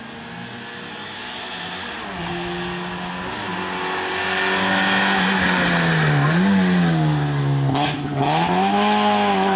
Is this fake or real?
real